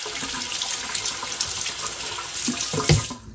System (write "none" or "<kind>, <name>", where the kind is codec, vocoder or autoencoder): none